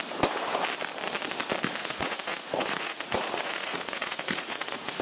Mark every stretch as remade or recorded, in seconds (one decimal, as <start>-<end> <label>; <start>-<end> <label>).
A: 0.0-1.8 recorded; 1.8-5.0 remade